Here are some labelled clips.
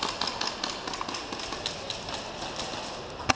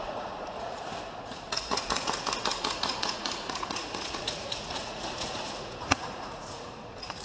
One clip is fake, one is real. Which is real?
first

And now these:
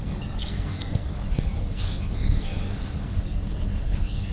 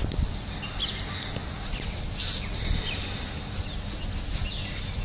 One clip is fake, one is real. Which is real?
second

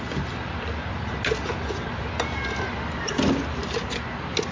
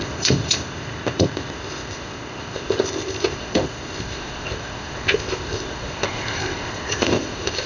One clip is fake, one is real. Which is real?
first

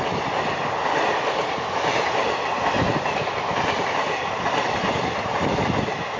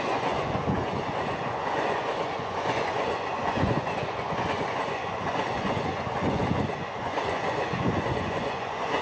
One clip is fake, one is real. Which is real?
first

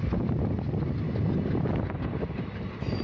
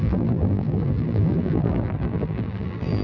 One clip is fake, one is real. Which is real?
first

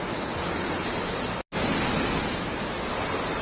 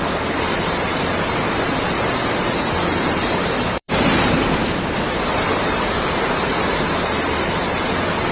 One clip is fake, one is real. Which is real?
first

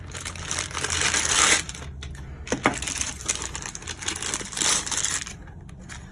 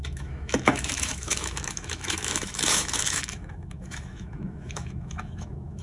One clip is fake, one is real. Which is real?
first